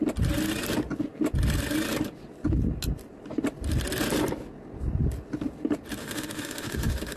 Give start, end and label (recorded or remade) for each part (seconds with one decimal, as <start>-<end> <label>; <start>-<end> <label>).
0.0-6.0 recorded; 6.0-7.2 remade